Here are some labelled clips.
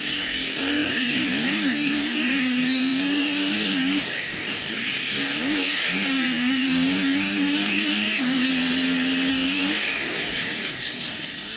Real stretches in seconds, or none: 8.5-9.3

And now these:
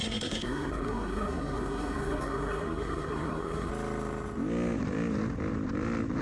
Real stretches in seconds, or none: 3.7-6.2

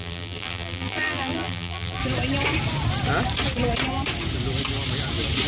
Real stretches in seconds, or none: 2.0-5.5

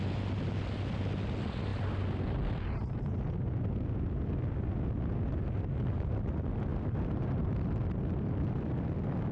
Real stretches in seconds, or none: 0.0-9.3

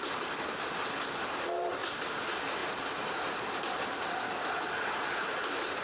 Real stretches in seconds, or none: 0.0-5.8

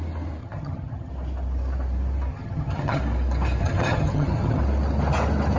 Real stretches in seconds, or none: 0.0-0.4; 1.1-2.3; 3.0-3.6; 4.6-5.6

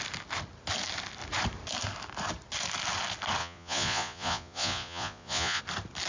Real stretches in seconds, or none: 0.0-3.4; 5.6-6.1